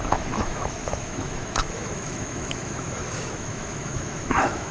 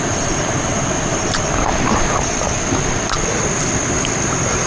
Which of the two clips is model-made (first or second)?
first